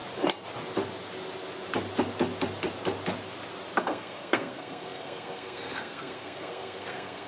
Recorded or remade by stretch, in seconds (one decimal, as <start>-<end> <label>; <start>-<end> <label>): 0.0-3.8 recorded; 3.8-7.3 remade